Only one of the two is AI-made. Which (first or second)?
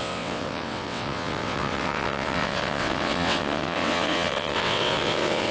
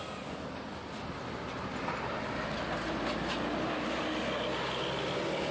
first